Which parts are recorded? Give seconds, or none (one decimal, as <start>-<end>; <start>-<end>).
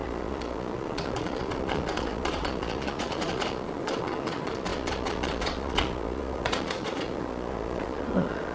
none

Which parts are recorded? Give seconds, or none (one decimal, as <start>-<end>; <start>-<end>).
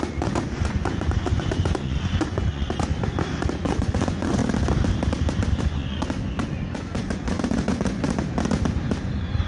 2.9-3.6; 4.4-5.6; 8.0-9.0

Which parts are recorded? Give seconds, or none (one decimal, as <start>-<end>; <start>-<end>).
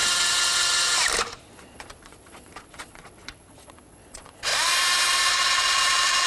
0.0-1.4; 4.5-5.3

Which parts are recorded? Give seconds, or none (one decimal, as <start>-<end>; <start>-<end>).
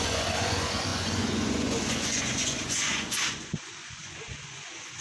none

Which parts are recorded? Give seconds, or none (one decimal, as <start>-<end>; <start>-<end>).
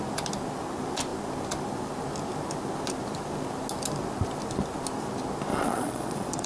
0.0-5.5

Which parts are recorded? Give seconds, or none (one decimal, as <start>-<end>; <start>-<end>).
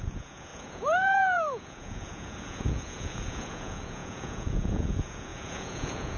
none